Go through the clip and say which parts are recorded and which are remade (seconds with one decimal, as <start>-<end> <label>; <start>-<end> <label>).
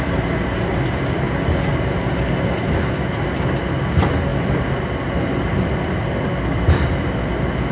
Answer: 0.0-7.7 recorded